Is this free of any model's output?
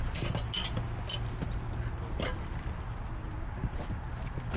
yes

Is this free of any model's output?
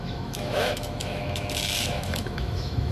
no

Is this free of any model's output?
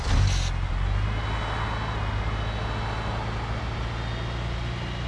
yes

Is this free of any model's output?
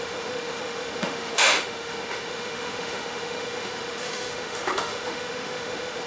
no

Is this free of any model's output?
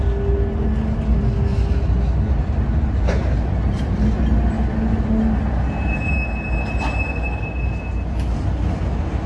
yes